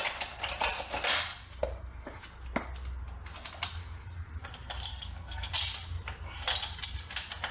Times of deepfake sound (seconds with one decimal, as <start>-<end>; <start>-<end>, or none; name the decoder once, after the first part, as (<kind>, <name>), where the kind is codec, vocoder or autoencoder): 4.9-5.5 (codec, SNAC)